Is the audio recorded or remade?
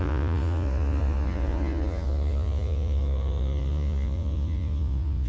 remade